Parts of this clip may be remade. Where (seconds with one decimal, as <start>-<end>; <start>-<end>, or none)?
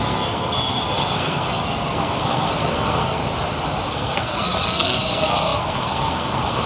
0.0-3.2; 3.9-6.7